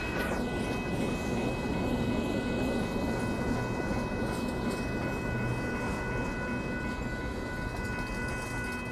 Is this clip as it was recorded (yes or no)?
yes